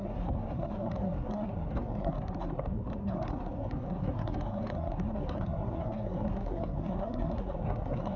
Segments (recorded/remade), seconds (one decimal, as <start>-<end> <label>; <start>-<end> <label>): 0.0-8.2 remade